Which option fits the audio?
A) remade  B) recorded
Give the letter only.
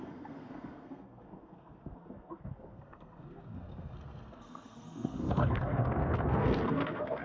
A